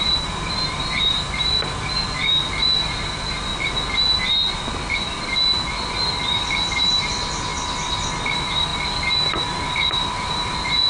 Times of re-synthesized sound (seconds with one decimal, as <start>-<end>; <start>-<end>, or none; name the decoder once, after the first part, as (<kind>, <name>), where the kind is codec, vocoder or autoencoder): 0.0-3.5 (vocoder, BigVGAN v2); 6.3-7.5; 8.2-8.7; 9.3-10.9

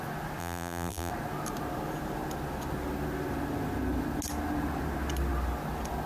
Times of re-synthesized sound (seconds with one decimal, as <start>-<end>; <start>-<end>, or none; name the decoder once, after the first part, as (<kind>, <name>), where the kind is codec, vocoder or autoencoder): 0.4-1.1 (vocoder, BigVGAN v2)

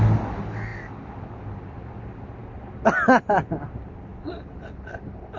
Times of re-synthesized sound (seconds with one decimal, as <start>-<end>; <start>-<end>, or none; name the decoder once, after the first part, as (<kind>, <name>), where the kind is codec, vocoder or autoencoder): 0.7-2.0 (vocoder, BigVGAN v2); 4.1-4.9

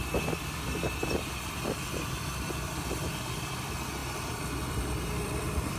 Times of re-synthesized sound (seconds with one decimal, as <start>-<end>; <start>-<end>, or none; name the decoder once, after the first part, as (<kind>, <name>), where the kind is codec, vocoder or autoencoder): 0.0-5.8 (vocoder, BigVGAN v2)

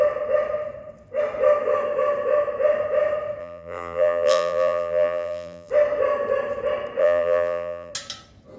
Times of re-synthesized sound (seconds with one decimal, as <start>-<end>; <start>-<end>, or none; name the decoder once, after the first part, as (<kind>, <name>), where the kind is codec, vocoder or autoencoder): 3.4-5.7 (vocoder, BigVGAN v2); 7.0-7.9